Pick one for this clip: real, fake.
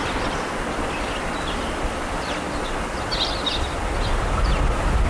real